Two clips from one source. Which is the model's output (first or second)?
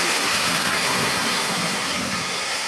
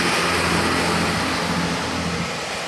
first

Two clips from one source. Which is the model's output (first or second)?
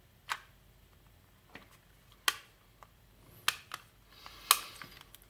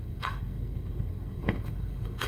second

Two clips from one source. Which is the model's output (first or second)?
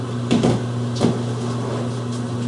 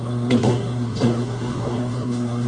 second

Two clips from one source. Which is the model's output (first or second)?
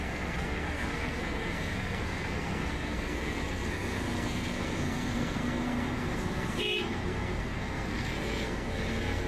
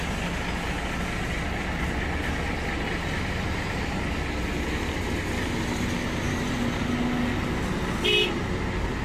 first